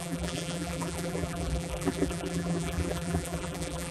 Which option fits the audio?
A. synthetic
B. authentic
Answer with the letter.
A